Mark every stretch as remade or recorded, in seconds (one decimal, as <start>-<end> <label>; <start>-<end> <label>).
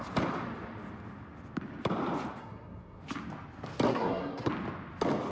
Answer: 0.0-2.4 recorded; 2.4-3.0 remade; 3.0-3.9 recorded; 3.9-4.5 remade; 4.5-5.3 recorded